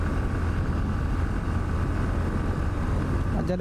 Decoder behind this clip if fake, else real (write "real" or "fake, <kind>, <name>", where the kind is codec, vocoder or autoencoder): real